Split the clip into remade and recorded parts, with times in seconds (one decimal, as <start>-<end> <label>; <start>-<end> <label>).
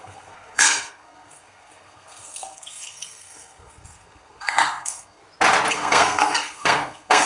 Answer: 0.0-5.2 remade; 5.2-5.7 recorded; 5.7-7.3 remade